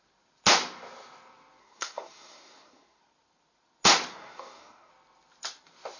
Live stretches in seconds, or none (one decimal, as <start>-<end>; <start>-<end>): 0.0-1.6; 3.0-4.1; 4.9-6.0